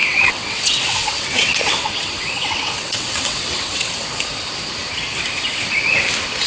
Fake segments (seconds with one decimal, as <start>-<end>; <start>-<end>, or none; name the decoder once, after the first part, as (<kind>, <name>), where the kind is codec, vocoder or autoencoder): 0.0-3.9 (vocoder, WaveNeXt)